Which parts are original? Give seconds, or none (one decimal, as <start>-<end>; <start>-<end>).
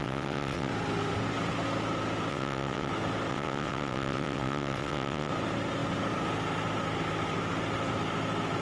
0.7-2.3; 2.9-3.3; 5.3-8.6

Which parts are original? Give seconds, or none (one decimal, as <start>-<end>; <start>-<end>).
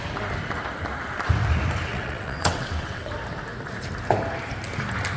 0.0-1.9; 3.1-5.2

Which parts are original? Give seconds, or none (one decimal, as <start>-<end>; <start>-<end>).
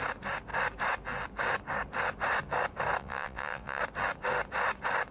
0.0-3.0; 3.8-5.1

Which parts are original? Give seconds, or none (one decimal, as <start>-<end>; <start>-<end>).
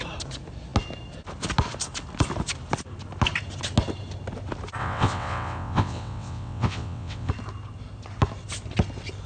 0.0-4.8; 7.3-9.3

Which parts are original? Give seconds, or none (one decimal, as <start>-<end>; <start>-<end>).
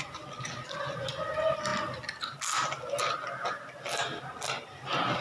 0.0-5.2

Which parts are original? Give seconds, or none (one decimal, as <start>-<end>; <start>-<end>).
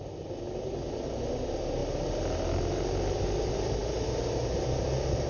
0.0-5.3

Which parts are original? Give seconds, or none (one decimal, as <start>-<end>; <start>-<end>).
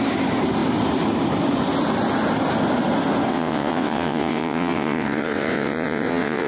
0.0-3.3